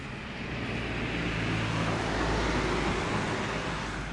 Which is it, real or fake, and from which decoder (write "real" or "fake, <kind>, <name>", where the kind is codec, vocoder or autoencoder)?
real